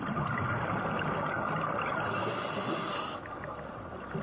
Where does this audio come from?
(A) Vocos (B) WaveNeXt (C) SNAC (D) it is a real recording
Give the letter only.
D